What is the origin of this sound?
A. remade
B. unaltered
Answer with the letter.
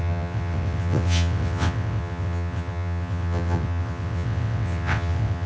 A